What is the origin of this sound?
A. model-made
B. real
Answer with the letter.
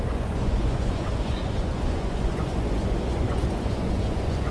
A